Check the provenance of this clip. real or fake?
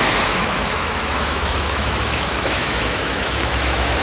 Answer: fake